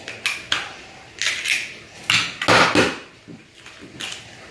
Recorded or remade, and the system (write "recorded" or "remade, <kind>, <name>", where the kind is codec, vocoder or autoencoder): recorded